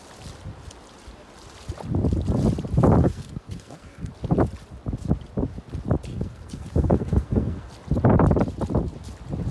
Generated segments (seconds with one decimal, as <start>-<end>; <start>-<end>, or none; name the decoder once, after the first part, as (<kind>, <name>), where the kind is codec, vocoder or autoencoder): 3.0-4.1 (codec, SNAC); 6.1-7.7